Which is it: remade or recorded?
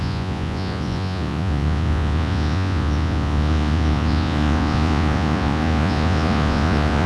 remade